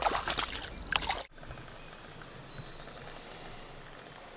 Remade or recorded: recorded